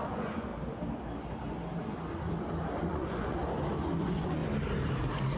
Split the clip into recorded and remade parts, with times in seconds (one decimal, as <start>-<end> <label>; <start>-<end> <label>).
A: 0.0-0.5 remade; 0.5-2.8 recorded; 2.8-3.4 remade; 3.4-4.0 recorded; 4.0-4.4 remade; 4.4-5.4 recorded